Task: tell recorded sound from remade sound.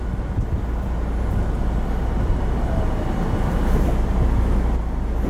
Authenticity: recorded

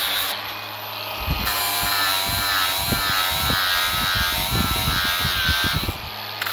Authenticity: recorded